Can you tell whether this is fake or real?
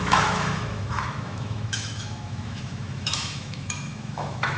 fake